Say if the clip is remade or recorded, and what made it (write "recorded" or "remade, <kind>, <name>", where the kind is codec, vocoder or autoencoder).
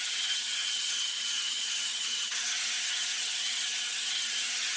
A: remade, vocoder, HiFi-GAN